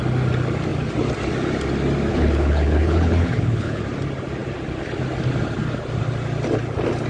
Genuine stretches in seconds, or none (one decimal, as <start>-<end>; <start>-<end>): 0.0-2.1; 3.8-7.1